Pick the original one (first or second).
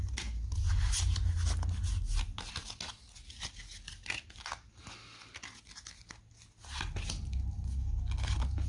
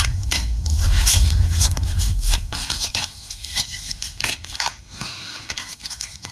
first